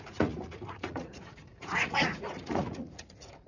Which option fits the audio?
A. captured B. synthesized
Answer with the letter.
B